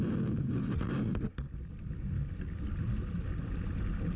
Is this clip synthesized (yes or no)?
no